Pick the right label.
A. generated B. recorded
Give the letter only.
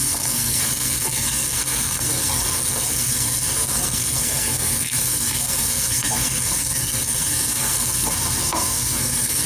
A